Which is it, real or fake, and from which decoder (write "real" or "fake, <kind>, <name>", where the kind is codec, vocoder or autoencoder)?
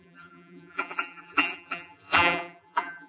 fake, vocoder, BigVGAN v2